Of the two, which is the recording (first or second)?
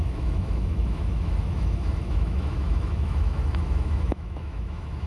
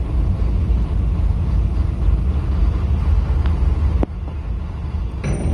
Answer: second